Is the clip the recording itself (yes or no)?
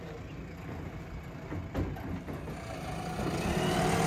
yes